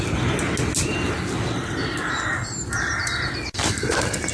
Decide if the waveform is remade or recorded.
recorded